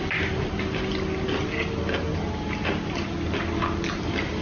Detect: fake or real real